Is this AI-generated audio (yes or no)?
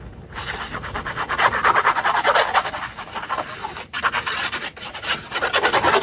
no